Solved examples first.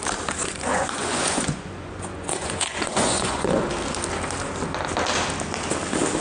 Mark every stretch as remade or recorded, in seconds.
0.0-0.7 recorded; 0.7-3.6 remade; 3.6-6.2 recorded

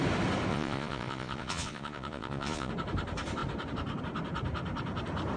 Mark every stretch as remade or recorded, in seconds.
0.0-0.5 recorded; 0.5-2.7 remade; 2.7-5.4 recorded

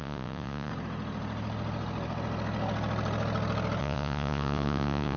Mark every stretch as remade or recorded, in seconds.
0.0-0.7 remade; 0.7-3.8 recorded; 3.8-5.2 remade

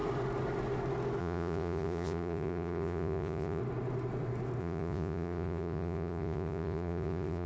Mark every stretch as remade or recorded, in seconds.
0.0-1.2 recorded; 1.2-3.6 remade; 3.6-4.6 recorded; 4.6-7.5 remade